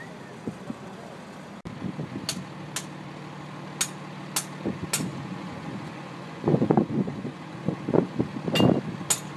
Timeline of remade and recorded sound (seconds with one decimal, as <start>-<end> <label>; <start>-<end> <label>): 0.0-5.1 recorded; 5.1-8.2 remade; 8.2-9.4 recorded